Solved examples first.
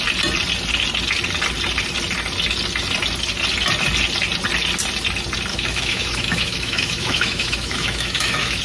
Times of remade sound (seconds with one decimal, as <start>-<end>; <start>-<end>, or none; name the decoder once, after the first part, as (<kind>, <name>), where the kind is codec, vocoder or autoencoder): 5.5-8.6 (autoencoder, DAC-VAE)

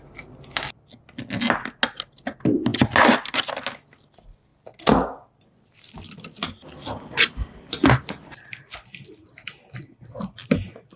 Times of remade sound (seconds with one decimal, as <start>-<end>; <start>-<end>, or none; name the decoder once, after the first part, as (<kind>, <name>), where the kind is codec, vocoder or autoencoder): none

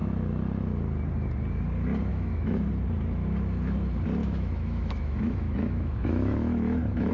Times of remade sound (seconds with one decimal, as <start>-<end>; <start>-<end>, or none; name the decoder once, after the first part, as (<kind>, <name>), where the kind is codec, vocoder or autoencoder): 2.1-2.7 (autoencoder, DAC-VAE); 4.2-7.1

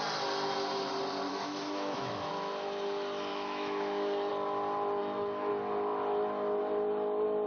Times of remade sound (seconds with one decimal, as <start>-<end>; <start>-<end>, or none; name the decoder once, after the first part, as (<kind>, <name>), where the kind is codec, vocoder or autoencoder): 1.3-2.3 (autoencoder, DAC-VAE); 3.3-4.3; 5.0-5.5